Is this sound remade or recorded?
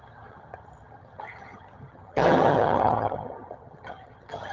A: remade